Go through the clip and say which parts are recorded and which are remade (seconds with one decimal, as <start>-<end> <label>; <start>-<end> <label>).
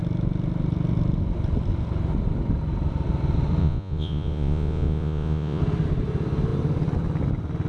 0.0-3.6 recorded; 3.6-5.6 remade; 5.6-7.7 recorded